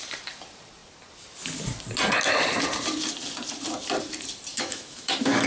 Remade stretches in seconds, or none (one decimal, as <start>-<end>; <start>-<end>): 4.5-5.5